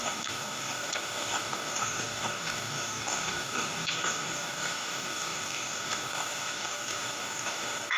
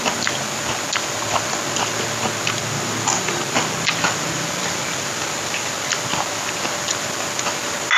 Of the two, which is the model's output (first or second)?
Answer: first